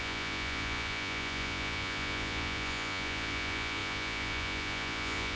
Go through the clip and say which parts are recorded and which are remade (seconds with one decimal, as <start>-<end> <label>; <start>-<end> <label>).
0.0-5.4 remade